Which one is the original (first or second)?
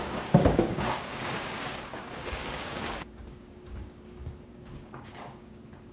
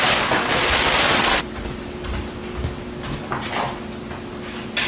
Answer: second